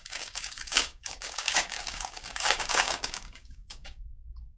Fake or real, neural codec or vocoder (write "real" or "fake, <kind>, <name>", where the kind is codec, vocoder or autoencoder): fake, codec, DAC